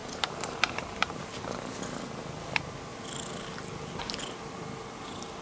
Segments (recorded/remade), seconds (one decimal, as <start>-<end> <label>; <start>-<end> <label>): 0.0-1.2 remade; 1.2-5.4 recorded